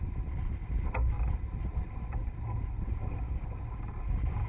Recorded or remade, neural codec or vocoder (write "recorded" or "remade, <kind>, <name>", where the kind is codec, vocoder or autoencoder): recorded